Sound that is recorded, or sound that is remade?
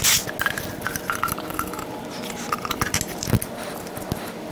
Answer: recorded